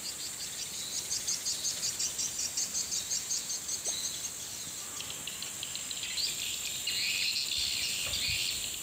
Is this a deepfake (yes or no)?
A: no